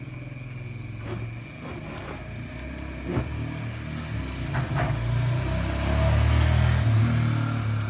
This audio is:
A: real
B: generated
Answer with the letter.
A